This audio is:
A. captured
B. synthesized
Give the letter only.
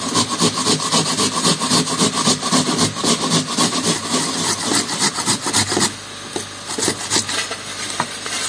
A